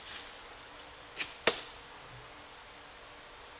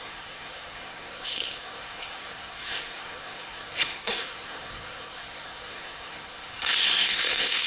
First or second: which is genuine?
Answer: first